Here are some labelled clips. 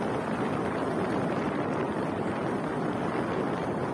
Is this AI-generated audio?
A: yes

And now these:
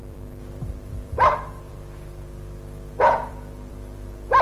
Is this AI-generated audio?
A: yes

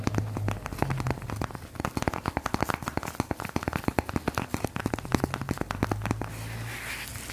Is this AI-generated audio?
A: no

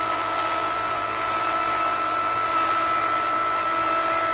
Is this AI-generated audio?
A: yes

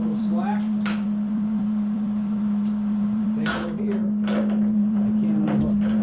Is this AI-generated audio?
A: yes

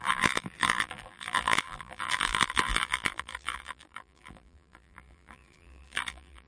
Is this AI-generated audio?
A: yes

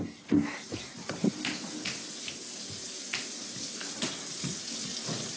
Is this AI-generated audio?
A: no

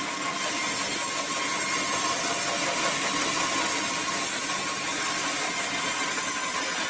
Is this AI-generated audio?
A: no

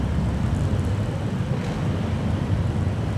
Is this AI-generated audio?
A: no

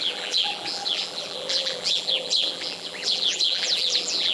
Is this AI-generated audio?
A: yes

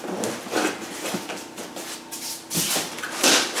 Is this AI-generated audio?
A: no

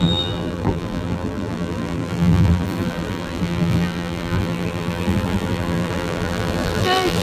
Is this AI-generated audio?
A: yes